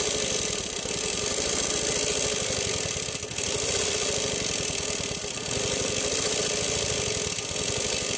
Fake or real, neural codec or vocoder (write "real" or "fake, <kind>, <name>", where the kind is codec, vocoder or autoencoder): real